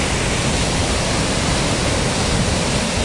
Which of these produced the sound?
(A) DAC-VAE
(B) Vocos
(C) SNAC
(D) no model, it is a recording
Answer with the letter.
D